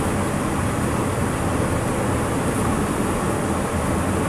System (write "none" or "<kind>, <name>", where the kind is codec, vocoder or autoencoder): none